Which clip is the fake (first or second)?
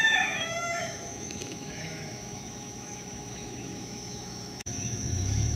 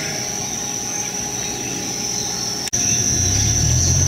first